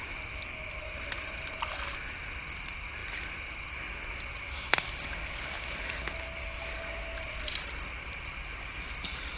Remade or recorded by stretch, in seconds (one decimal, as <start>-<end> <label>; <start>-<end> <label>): 0.0-9.4 recorded